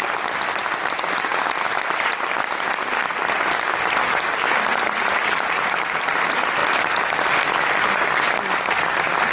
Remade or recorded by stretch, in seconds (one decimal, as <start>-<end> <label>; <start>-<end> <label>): 0.0-0.6 remade; 0.6-5.1 recorded; 5.1-6.6 remade; 6.6-8.6 recorded; 8.6-9.3 remade

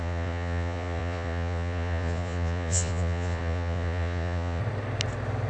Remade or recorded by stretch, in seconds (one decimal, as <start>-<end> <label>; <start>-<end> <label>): 0.0-4.6 remade; 4.6-5.5 recorded

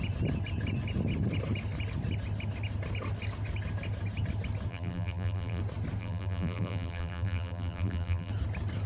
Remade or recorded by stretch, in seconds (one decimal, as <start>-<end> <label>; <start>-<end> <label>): 0.0-4.7 recorded; 4.7-5.6 remade; 5.6-6.0 recorded; 6.0-8.3 remade; 8.3-8.9 recorded

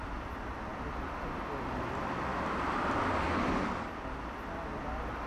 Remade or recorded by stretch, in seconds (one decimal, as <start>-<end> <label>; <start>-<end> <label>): 0.0-0.7 recorded; 0.7-1.4 remade; 1.4-5.3 recorded